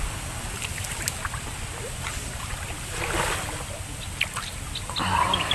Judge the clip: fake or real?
real